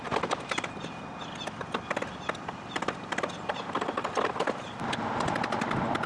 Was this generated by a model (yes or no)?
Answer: no